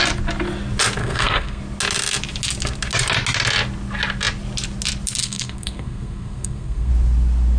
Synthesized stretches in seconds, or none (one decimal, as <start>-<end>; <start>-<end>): 1.0-1.6; 5.2-6.9